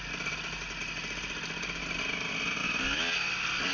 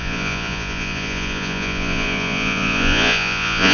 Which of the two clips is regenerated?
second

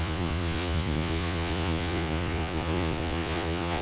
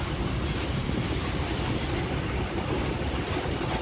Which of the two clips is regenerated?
first